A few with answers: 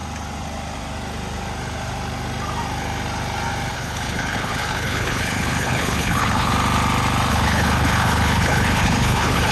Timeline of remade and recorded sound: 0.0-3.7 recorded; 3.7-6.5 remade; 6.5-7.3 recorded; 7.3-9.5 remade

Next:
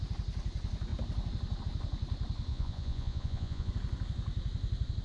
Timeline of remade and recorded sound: 0.0-2.5 recorded; 2.5-3.7 remade; 3.7-5.0 recorded

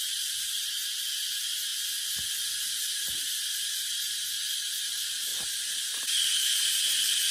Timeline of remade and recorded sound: 0.0-1.7 remade; 1.7-2.7 recorded; 2.7-5.3 remade; 5.3-6.0 recorded; 6.0-7.3 remade

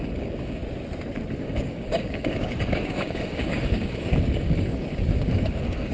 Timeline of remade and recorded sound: 0.0-0.6 remade; 0.6-1.4 recorded; 1.4-5.9 remade

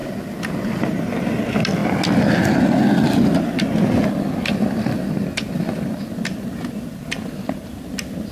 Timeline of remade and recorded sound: 0.0-8.3 recorded

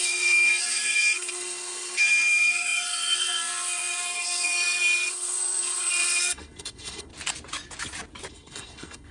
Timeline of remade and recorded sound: 0.0-7.1 remade; 7.1-8.3 recorded; 8.3-9.1 remade

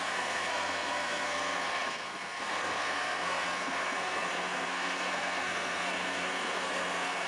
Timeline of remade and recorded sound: 0.0-7.3 remade